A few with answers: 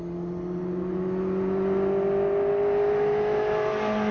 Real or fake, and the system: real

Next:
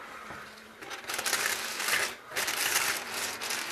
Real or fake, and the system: real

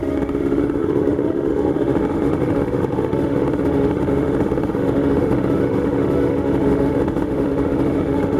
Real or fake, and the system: fake, autoencoder, DAC-VAE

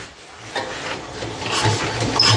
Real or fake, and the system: real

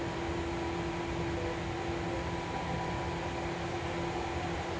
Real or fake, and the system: real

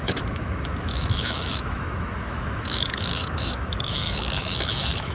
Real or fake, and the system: fake, autoencoder, DAC-VAE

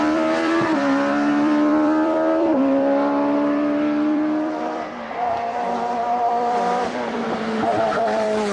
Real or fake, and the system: fake, vocoder, BigVGAN v2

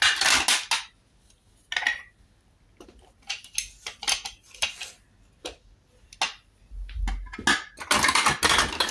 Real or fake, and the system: real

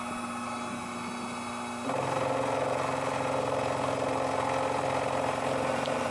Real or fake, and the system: real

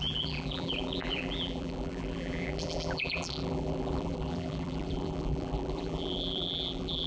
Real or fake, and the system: fake, vocoder, BigVGAN v2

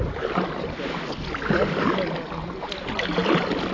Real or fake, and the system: real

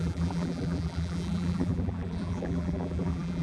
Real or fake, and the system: fake, vocoder, BigVGAN v2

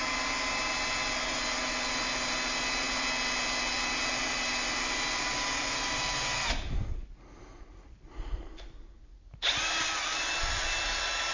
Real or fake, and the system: real